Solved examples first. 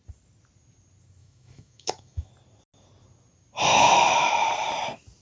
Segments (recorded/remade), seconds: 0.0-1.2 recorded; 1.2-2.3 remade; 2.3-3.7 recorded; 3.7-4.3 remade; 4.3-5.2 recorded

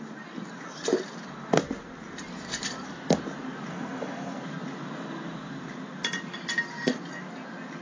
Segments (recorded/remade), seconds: 0.0-3.7 recorded; 3.7-4.4 remade; 4.4-7.8 recorded

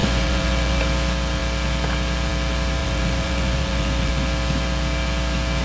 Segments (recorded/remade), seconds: 0.0-0.8 remade; 0.8-2.8 recorded; 2.8-4.1 remade; 4.1-5.6 recorded